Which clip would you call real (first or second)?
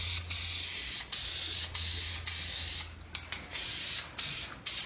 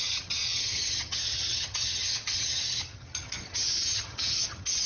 first